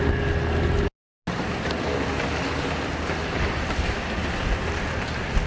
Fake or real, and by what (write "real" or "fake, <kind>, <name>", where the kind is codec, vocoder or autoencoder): real